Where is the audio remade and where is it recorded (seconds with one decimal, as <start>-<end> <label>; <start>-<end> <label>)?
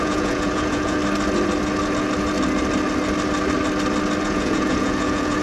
0.0-1.0 remade; 1.0-4.2 recorded; 4.2-5.4 remade